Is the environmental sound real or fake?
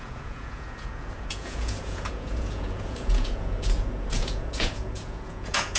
fake